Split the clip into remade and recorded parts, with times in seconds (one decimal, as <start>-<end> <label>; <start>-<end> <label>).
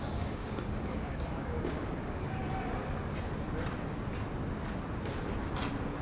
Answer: 0.0-2.4 remade; 2.4-6.0 recorded